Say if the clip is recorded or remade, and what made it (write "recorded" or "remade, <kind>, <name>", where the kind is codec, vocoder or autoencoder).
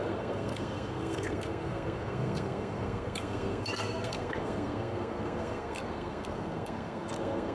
remade, codec, SNAC